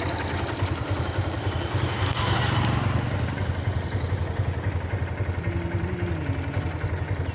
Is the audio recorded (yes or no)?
yes